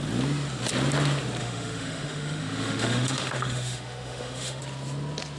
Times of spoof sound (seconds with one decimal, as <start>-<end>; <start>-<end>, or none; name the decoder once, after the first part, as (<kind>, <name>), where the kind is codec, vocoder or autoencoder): 1.4-4.6 (autoencoder, DAC-VAE)